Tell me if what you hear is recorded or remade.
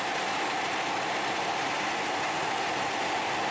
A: recorded